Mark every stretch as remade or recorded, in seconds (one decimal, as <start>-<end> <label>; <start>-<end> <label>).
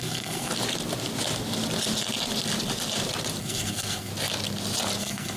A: 0.0-0.5 remade; 0.5-3.4 recorded; 3.4-4.1 remade; 4.1-5.0 recorded; 5.0-5.4 remade